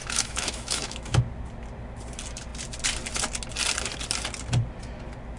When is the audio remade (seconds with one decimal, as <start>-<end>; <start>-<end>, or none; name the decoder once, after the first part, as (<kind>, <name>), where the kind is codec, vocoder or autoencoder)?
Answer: 0.0-1.2 (autoencoder, DAC-VAE)